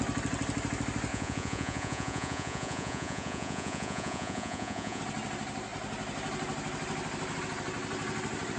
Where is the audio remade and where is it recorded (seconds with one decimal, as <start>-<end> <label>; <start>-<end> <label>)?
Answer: 0.0-1.1 recorded; 1.1-5.0 remade; 5.0-8.6 recorded